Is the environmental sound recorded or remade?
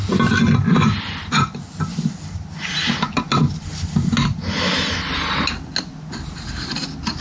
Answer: recorded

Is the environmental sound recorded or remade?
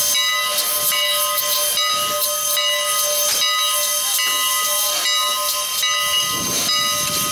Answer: recorded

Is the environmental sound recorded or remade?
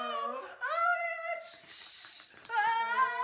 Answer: recorded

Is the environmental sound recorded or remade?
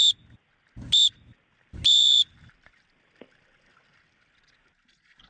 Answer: recorded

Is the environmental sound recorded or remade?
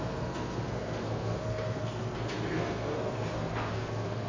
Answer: remade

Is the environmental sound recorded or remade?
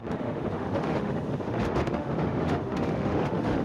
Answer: remade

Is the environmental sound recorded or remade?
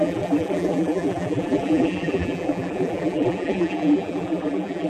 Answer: remade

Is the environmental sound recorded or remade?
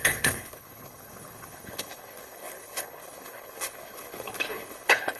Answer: remade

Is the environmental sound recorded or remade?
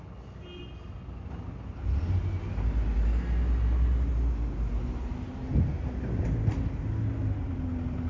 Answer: recorded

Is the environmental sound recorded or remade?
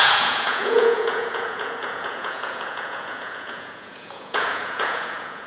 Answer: remade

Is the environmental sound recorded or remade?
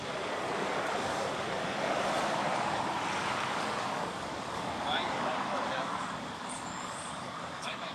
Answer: remade